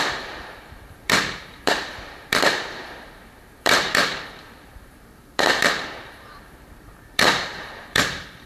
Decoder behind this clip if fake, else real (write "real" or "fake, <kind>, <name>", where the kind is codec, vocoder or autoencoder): fake, vocoder, BigVGAN v2